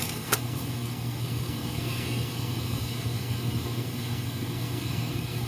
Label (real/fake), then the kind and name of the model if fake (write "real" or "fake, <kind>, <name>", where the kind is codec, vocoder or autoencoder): fake, codec, SNAC